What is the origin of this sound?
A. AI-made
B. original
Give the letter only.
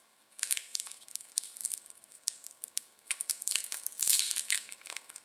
A